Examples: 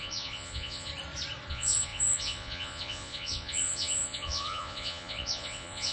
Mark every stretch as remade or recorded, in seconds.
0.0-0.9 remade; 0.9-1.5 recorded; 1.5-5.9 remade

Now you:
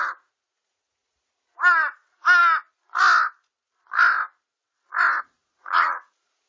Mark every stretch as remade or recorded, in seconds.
0.0-2.4 remade; 2.4-5.2 recorded; 5.2-6.5 remade

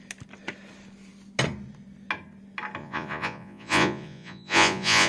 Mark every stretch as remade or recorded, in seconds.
0.0-2.8 recorded; 2.8-5.1 remade

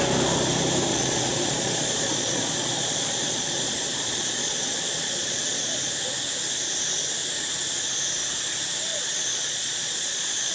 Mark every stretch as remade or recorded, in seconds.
0.0-0.9 recorded; 0.9-5.8 remade; 5.8-8.9 recorded; 8.9-10.5 remade

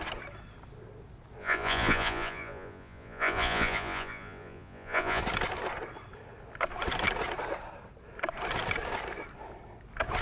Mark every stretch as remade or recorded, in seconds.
0.0-1.4 recorded; 1.4-5.2 remade; 5.2-10.2 recorded

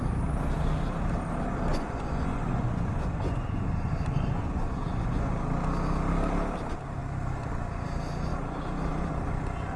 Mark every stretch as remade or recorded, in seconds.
0.0-1.7 recorded; 1.7-5.3 remade; 5.3-9.8 recorded